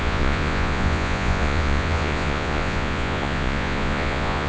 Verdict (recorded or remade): remade